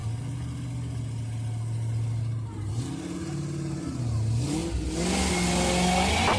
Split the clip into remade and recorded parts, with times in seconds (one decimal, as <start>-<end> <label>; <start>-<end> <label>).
0.0-6.4 recorded